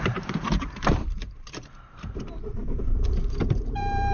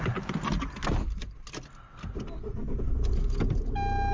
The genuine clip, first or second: second